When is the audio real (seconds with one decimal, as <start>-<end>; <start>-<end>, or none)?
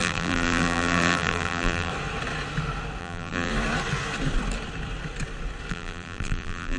1.9-3.0; 3.5-5.7